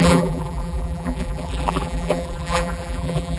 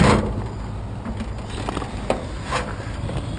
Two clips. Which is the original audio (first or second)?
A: second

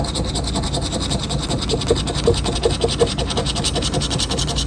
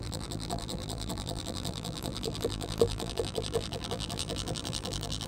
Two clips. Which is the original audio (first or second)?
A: first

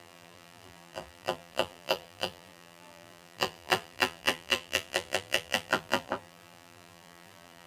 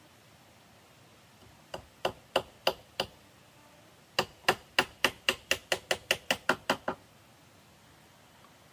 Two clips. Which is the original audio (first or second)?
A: second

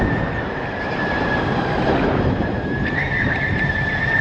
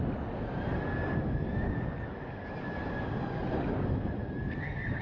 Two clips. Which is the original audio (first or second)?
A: second